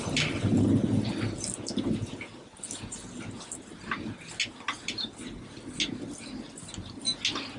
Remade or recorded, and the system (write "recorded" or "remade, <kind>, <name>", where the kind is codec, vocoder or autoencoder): recorded